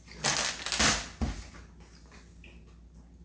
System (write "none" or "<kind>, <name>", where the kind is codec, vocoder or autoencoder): none